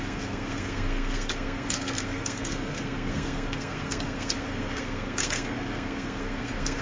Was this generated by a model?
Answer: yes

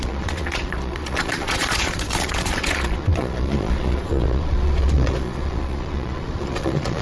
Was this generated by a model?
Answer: yes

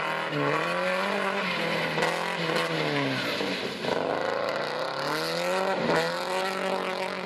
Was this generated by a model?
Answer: no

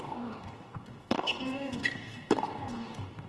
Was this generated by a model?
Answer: yes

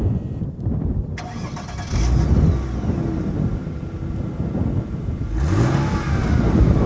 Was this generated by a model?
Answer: no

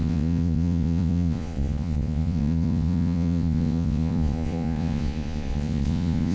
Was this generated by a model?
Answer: yes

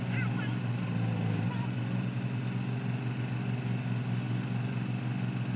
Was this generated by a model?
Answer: no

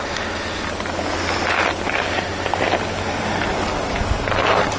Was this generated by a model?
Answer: no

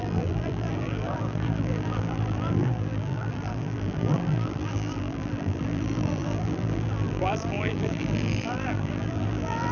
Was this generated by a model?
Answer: yes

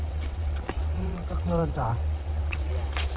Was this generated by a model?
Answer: yes